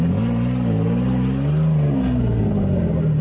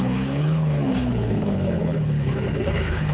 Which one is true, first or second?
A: first